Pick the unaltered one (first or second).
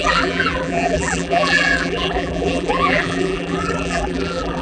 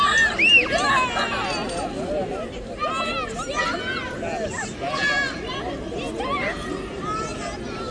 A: second